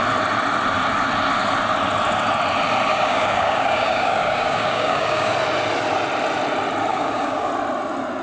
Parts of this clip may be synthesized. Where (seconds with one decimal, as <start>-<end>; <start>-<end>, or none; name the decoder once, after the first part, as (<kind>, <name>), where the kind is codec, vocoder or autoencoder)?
2.9-5.3 (codec, DAC); 6.9-7.5